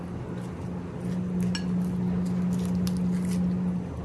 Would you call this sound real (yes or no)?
yes